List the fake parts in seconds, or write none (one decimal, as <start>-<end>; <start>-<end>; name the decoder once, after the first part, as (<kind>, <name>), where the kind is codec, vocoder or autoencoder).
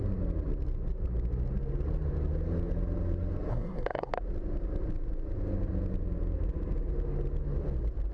3.5-4.1 (codec, SNAC)